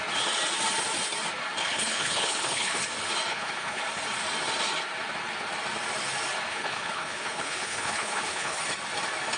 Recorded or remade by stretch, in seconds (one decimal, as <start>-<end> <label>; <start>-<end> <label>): 0.0-1.6 recorded; 1.6-2.8 remade; 2.8-3.3 recorded; 3.3-3.8 remade; 3.8-6.5 recorded; 6.5-8.6 remade; 8.6-9.4 recorded